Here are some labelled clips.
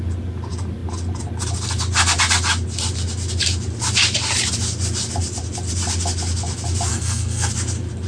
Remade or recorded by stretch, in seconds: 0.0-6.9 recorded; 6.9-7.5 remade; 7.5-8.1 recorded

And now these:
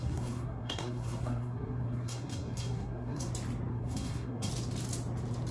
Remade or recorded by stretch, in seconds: 0.0-3.3 remade; 3.3-3.7 recorded; 3.7-4.5 remade; 4.5-5.5 recorded

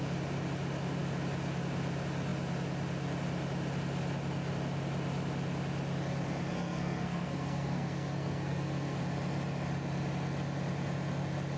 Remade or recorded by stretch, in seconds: 0.0-6.5 recorded; 6.5-9.0 remade; 9.0-11.6 recorded

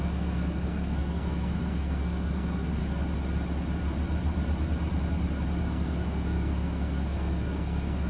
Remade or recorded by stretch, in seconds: 0.0-2.8 remade; 2.8-5.6 recorded; 5.6-8.1 remade